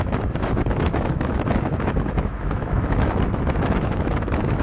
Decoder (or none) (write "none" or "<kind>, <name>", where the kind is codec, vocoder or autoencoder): autoencoder, DAC-VAE